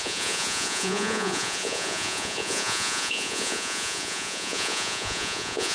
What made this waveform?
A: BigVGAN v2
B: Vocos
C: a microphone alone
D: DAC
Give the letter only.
B